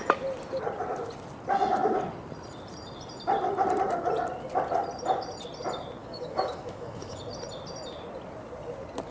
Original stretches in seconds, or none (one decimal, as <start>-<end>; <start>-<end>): 0.0-6.0; 7.2-9.1